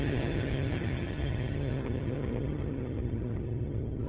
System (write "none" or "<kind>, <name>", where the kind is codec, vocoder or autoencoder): vocoder, HiFi-GAN